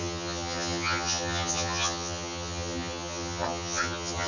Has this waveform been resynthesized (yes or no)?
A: yes